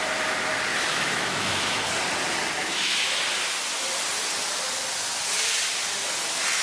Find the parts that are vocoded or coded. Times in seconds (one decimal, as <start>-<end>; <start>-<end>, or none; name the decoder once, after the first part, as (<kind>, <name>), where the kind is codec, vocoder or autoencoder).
0.7-1.8 (autoencoder, DAC-VAE); 2.6-3.2